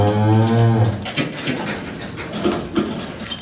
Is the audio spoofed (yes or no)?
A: no